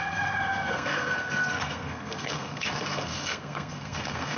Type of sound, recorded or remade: remade